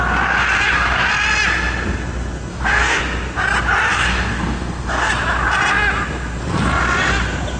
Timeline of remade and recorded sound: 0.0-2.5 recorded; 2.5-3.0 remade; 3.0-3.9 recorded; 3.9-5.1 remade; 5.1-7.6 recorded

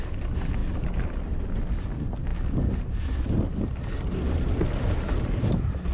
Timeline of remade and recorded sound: 0.0-5.9 recorded

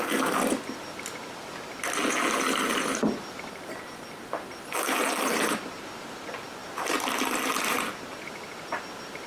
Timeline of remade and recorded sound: 0.0-9.3 recorded

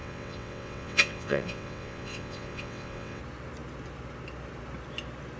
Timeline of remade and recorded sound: 0.0-3.2 remade; 3.2-5.4 recorded